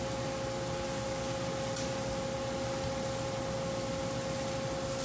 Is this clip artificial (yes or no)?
no